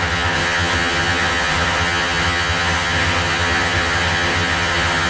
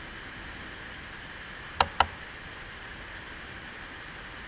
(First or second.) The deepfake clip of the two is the first